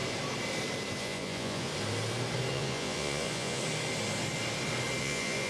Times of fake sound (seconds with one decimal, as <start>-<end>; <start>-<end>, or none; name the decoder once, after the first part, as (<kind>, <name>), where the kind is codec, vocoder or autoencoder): 1.0-1.7 (vocoder, Vocos); 2.5-3.6; 5.0-5.5